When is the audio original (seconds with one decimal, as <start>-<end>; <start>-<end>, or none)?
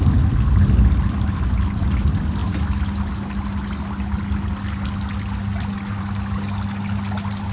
0.0-7.5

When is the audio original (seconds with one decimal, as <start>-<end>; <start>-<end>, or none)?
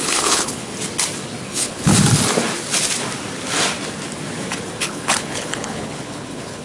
0.7-1.5; 1.9-4.8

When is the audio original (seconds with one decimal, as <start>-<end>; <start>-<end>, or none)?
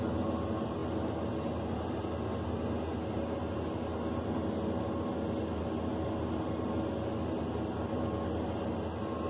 0.0-9.3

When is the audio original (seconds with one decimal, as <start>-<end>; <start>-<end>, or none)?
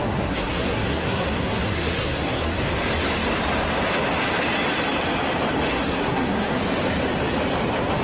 2.6-5.7; 6.6-8.0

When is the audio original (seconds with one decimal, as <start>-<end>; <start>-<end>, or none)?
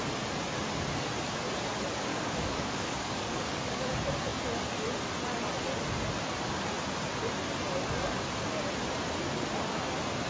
0.0-2.1; 3.9-10.3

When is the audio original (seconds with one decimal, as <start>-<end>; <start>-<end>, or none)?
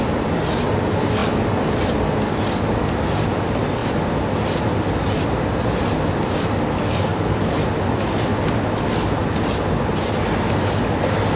0.0-7.1; 7.6-11.4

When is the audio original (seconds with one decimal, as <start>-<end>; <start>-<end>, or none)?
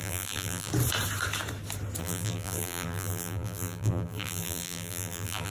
0.7-2.0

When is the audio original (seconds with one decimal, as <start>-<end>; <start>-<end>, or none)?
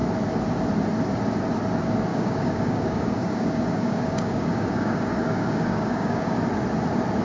0.0-2.1; 6.4-7.2